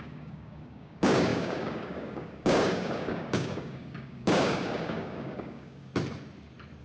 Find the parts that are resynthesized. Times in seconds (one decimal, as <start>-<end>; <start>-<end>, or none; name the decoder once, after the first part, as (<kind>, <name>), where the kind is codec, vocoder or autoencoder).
0.0-5.9 (codec, DAC)